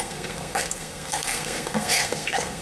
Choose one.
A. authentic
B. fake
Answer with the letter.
B